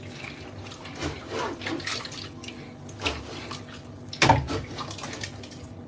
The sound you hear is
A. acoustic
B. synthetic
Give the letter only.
A